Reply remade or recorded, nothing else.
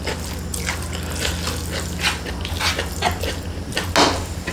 recorded